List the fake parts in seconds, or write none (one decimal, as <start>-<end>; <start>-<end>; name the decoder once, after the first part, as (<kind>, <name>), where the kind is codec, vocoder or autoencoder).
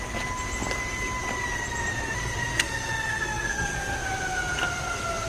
2.5-4.0 (codec, SNAC)